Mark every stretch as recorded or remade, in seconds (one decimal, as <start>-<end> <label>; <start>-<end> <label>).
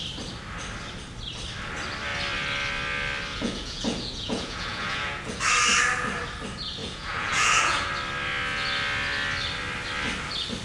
0.0-3.3 recorded; 3.3-5.4 remade; 5.4-6.8 recorded; 6.8-7.9 remade; 7.9-10.6 recorded